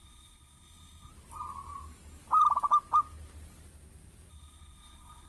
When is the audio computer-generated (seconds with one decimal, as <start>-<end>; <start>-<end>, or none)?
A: 0.0-1.1; 4.3-5.3